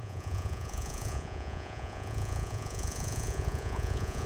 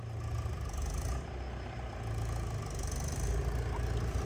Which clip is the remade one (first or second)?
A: first